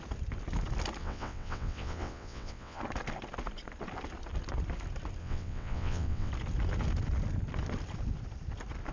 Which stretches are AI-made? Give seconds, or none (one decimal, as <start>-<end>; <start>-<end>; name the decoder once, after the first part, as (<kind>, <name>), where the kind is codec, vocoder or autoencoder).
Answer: 1.0-2.8 (vocoder, WaveNeXt); 5.2-6.3